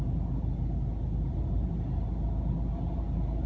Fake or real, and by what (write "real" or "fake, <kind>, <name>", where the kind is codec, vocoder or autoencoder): real